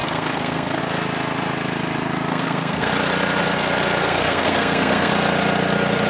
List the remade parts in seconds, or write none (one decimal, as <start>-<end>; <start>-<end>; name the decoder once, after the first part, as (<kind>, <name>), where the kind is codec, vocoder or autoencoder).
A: 0.0-0.8 (codec, SNAC); 2.3-2.9; 4.0-5.1